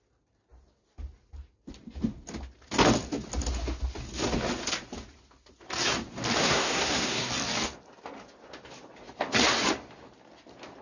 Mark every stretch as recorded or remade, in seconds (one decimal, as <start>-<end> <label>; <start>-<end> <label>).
0.0-6.4 recorded; 6.4-7.3 remade; 7.3-10.8 recorded